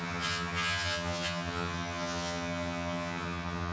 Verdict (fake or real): fake